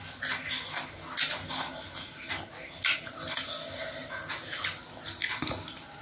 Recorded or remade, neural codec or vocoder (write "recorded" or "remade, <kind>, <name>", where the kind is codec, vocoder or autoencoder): recorded